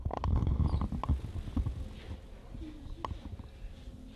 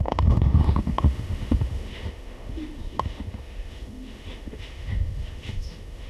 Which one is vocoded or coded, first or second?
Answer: second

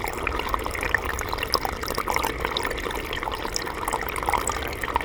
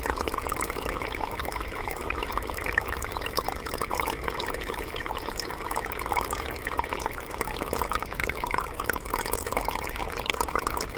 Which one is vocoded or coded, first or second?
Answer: second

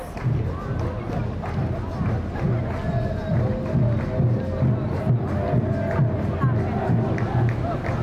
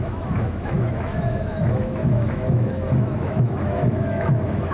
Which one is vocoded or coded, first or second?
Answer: second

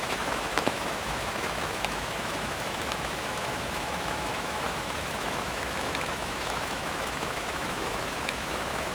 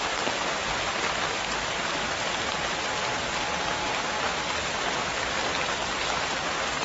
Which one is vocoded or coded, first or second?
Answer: first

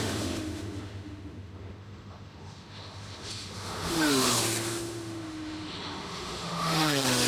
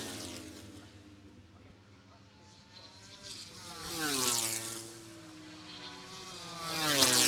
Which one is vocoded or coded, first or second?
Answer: first